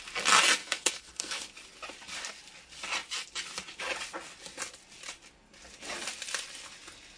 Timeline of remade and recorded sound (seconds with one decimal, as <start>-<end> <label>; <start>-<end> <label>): 0.0-0.6 recorded; 0.6-1.4 remade; 1.4-7.2 recorded